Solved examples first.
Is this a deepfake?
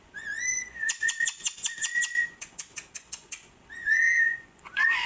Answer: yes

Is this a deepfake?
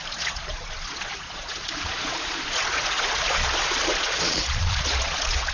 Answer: yes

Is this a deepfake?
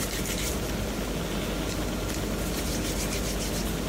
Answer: no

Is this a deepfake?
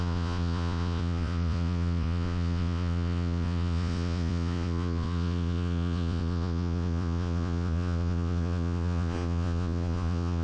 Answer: yes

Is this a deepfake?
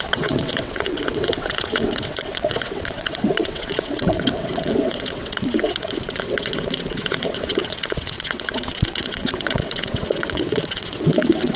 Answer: yes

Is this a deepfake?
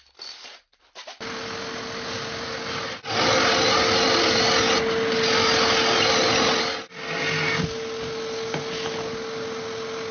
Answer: no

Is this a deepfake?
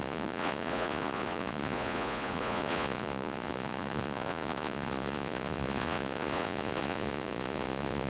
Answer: yes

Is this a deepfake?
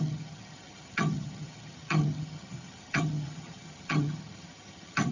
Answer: yes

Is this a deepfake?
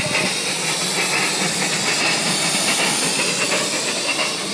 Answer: no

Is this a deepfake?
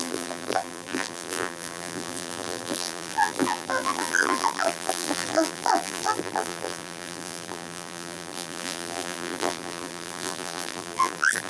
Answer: yes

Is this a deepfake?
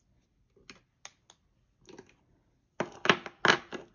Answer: no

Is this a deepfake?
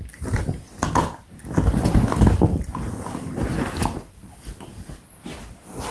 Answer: no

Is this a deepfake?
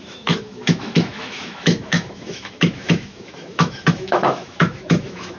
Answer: yes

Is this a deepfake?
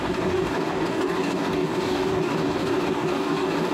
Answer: yes